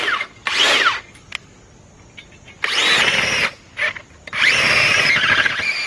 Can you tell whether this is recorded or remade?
recorded